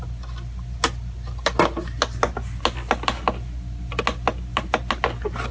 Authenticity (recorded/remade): recorded